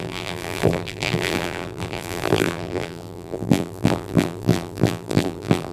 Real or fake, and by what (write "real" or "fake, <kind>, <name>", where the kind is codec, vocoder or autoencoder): fake, vocoder, BigVGAN v2